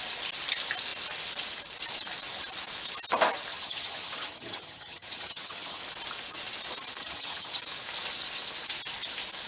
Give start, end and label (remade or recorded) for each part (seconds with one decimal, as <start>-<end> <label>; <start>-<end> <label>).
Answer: 0.0-3.5 recorded; 3.5-5.8 remade; 5.8-7.0 recorded; 7.0-7.6 remade; 7.6-9.5 recorded